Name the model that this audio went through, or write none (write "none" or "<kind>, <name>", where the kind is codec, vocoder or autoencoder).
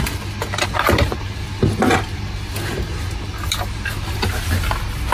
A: none